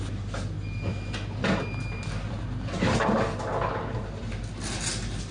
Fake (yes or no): no